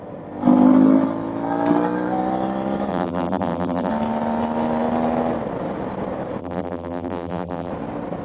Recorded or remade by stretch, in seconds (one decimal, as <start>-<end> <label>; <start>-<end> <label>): 0.0-2.9 recorded; 2.9-3.9 remade; 3.9-6.4 recorded; 6.4-7.7 remade; 7.7-8.2 recorded